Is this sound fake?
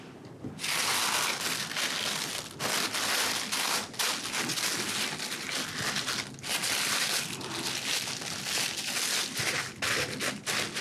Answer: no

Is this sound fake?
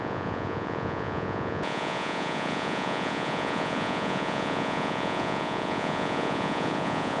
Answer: yes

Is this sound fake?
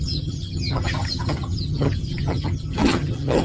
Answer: yes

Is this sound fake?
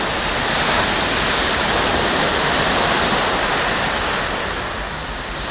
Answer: no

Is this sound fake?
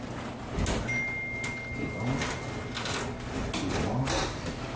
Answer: no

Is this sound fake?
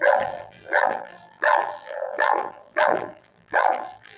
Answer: yes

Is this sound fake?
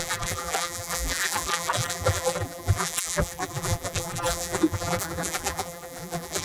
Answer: yes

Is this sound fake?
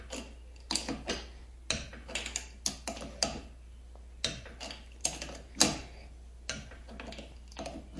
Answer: no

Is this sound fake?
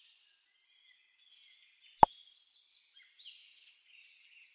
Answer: no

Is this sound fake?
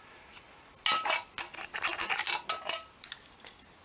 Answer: no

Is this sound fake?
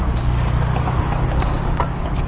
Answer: yes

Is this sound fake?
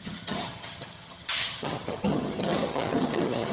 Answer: yes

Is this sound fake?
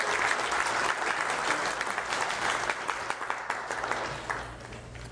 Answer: no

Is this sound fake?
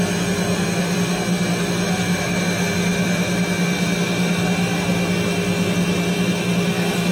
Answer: no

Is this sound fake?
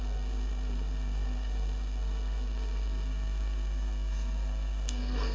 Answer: yes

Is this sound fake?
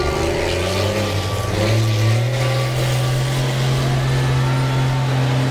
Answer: no